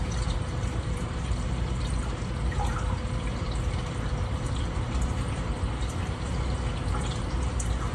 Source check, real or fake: fake